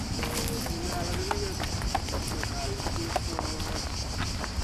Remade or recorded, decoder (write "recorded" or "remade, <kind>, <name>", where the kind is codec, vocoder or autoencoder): recorded